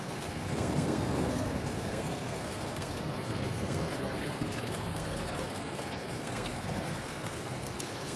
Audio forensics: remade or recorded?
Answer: remade